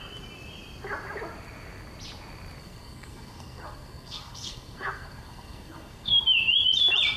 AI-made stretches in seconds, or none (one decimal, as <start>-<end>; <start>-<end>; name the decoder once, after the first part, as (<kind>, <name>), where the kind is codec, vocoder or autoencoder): 2.6-6.2 (codec, SNAC)